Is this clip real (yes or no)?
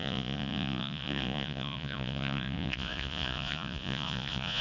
no